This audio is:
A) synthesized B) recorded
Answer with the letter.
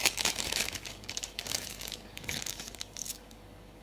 A